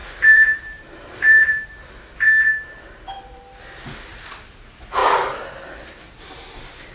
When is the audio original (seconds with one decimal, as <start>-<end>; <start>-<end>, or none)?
1.9-2.5; 3.6-6.9